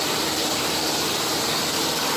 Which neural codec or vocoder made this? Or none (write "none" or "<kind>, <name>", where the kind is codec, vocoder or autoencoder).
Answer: vocoder, BigVGAN v2